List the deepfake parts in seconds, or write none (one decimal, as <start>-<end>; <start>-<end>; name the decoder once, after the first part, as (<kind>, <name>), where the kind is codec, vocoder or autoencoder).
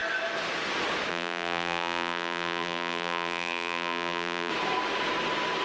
1.1-4.5 (vocoder, BigVGAN v2)